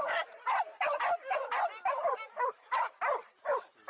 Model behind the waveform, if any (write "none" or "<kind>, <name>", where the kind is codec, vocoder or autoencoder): none